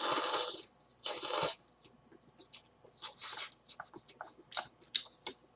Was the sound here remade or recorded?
recorded